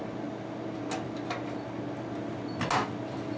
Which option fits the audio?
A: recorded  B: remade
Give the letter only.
A